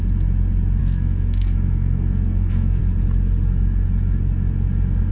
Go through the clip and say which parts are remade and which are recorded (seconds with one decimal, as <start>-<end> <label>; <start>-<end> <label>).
0.0-0.8 recorded; 0.8-2.8 remade; 2.8-5.1 recorded

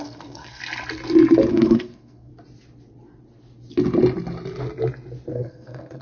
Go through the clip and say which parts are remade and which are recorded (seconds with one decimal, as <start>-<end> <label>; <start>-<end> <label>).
0.0-0.6 remade; 0.6-1.5 recorded; 1.5-2.3 remade; 2.3-5.3 recorded; 5.3-6.0 remade